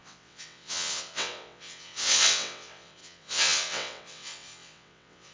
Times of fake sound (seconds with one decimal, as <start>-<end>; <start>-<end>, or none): 0.0-5.3